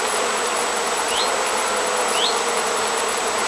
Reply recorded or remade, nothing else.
recorded